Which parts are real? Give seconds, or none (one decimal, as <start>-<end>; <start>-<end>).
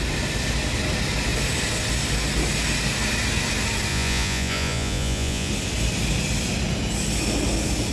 0.0-3.9; 5.5-7.9